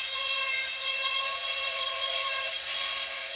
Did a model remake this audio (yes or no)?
yes